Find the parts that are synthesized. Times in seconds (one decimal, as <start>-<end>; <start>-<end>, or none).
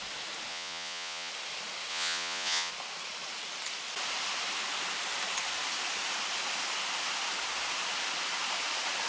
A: 0.5-1.3; 1.9-2.7